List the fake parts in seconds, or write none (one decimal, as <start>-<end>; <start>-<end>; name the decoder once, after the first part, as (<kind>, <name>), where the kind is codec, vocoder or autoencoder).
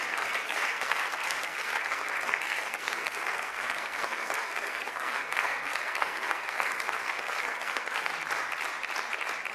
0.0-8.1 (codec, SNAC)